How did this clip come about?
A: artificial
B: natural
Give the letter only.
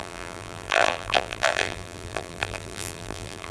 A